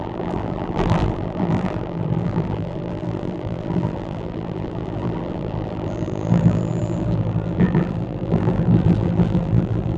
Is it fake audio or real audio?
fake